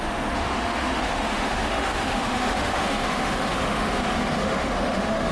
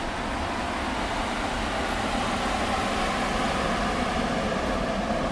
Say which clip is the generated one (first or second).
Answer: first